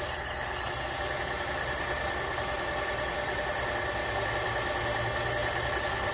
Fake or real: real